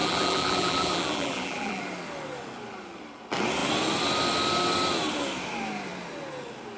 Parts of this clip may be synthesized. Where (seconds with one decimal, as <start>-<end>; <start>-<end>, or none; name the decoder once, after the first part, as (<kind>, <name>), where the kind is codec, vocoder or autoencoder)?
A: 0.0-1.8 (vocoder, BigVGAN v2)